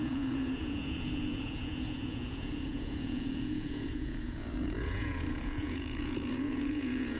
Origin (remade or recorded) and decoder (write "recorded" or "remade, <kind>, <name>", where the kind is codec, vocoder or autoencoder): remade, vocoder, Vocos